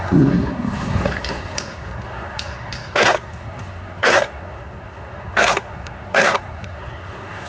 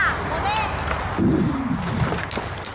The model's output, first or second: first